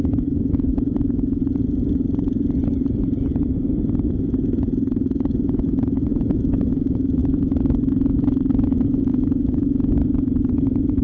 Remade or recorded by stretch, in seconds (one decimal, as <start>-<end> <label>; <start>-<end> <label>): 0.0-1.4 remade; 1.4-4.9 recorded; 4.9-10.0 remade; 10.0-10.5 recorded; 10.5-11.0 remade